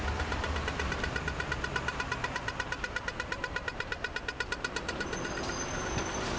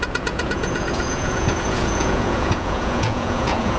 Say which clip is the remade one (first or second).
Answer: second